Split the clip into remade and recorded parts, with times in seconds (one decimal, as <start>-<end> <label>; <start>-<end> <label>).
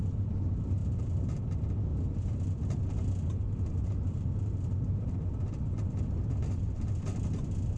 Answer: 0.0-0.8 recorded; 0.8-1.5 remade; 1.5-1.9 recorded; 1.9-6.6 remade; 6.6-7.8 recorded